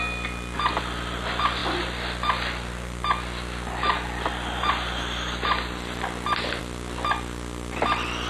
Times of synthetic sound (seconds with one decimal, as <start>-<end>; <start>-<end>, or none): none